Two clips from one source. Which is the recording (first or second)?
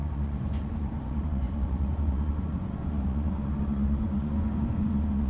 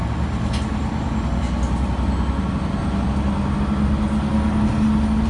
second